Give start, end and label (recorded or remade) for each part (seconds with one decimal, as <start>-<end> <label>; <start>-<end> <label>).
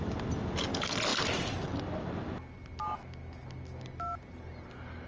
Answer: 0.0-1.1 recorded; 1.1-2.0 remade; 2.0-5.1 recorded